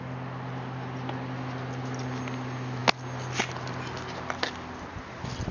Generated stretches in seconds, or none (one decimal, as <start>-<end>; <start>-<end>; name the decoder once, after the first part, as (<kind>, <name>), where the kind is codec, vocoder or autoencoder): none